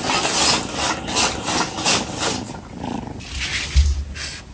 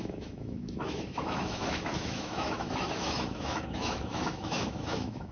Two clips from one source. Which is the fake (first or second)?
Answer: second